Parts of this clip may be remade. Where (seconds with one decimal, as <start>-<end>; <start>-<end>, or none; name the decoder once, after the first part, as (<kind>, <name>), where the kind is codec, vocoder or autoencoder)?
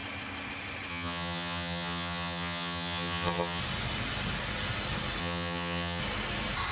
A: 0.9-3.6 (vocoder, HiFi-GAN); 5.2-6.0